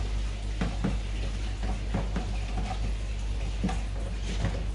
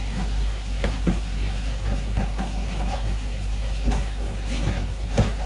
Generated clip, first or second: second